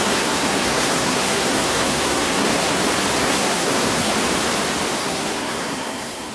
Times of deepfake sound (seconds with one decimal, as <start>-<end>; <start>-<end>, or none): 0.0-2.8; 3.2-4.1; 5.0-6.3